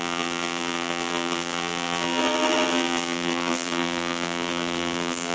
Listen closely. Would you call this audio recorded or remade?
remade